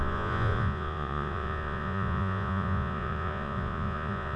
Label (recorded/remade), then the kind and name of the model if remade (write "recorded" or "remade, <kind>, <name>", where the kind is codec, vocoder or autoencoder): remade, vocoder, Vocos